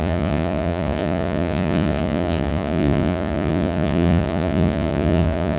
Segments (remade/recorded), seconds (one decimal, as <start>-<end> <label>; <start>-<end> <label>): 0.0-5.6 remade